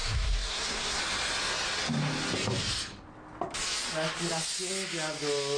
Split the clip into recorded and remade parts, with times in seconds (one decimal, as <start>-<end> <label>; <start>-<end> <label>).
0.0-1.0 remade; 1.0-5.6 recorded